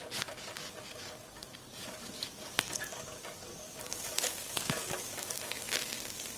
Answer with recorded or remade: remade